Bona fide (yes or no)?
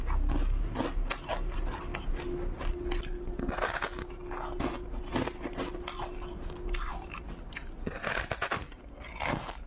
yes